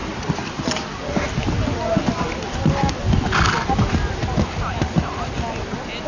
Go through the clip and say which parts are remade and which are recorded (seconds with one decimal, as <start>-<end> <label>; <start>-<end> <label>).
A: 0.0-6.1 recorded